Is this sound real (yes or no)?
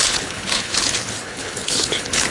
no